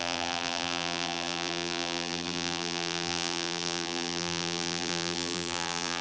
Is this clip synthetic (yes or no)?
yes